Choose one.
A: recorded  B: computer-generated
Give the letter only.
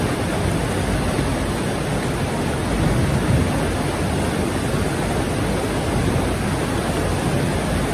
A